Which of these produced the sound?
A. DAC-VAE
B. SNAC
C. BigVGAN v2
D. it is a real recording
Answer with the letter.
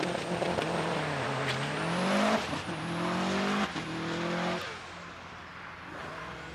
D